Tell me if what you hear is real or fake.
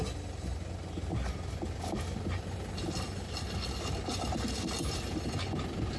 real